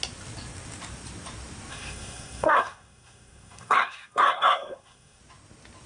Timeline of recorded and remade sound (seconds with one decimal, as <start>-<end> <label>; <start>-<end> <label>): 0.0-1.7 recorded; 1.7-5.2 remade; 5.2-5.9 recorded